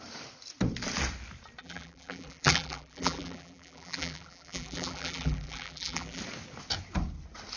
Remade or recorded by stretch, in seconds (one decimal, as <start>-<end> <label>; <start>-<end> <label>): 0.0-1.6 recorded; 1.6-6.2 remade; 6.2-7.6 recorded